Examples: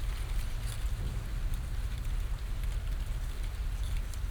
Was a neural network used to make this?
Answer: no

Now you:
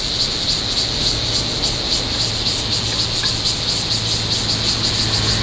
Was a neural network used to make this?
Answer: no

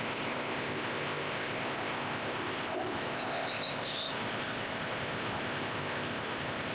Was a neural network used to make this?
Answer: yes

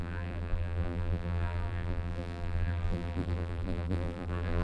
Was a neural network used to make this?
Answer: yes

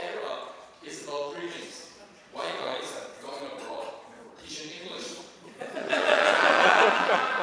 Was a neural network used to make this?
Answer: yes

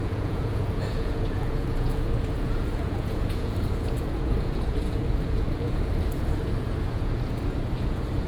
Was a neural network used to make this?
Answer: yes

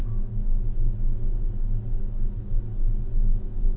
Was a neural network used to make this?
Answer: no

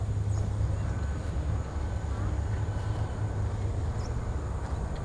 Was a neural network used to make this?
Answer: no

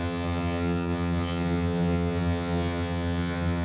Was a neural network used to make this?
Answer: yes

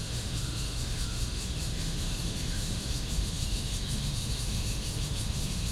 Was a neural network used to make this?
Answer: yes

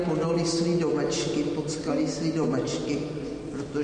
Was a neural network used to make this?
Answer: no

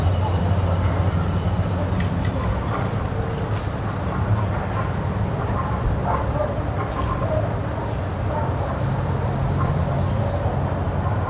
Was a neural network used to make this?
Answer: no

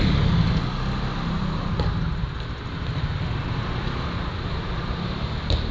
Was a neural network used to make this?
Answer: no